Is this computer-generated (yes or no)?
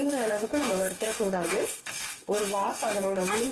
yes